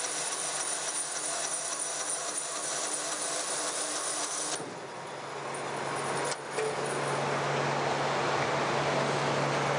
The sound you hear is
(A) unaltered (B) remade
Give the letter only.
A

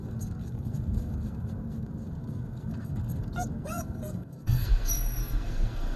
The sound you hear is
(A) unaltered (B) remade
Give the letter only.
B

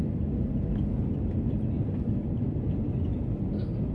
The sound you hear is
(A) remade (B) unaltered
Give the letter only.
B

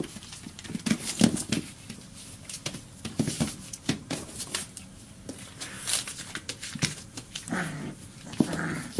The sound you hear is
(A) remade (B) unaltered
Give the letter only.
B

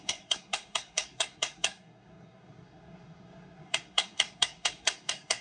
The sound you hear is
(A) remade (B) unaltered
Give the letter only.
A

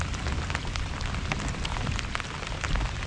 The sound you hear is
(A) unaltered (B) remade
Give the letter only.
A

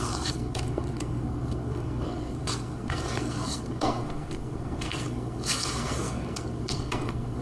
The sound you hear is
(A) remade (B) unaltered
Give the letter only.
A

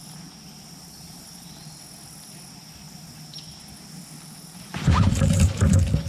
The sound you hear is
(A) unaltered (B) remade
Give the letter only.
A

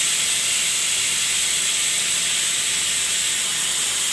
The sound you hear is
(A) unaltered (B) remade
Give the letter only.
A